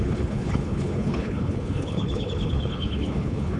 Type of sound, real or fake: fake